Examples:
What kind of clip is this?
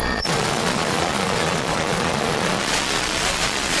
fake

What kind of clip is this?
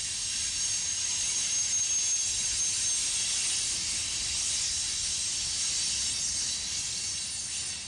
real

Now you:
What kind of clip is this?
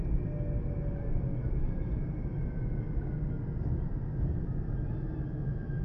real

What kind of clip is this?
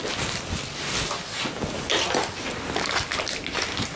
real